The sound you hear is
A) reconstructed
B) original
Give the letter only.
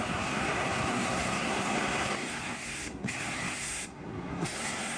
A